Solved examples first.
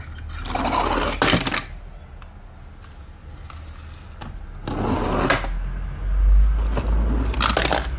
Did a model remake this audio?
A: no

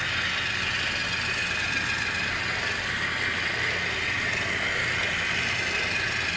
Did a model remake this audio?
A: no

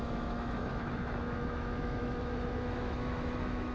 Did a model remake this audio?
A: yes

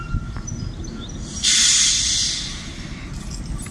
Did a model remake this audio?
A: no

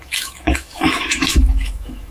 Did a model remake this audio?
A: yes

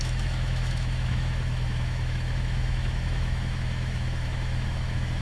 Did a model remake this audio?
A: yes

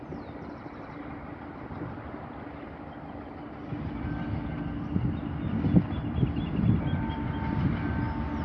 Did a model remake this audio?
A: no